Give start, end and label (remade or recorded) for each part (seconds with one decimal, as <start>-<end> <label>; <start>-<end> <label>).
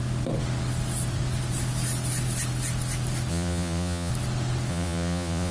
0.0-3.3 recorded; 3.3-4.1 remade; 4.1-4.7 recorded; 4.7-5.5 remade